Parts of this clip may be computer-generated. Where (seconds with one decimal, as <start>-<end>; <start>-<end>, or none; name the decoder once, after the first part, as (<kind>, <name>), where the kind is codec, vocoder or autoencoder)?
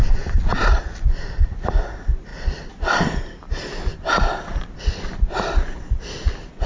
none